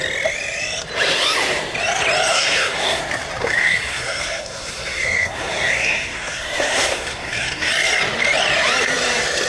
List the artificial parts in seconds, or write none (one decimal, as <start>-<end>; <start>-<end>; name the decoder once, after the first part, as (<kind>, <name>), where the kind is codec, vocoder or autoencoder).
2.3-3.0 (codec, SNAC); 3.4-7.7